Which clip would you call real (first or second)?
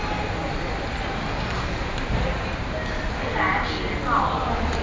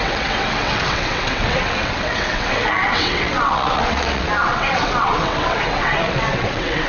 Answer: first